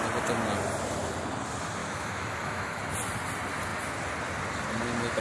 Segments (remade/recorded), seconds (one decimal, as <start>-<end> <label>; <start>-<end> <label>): 0.0-1.8 recorded; 1.8-2.8 remade; 2.8-5.2 recorded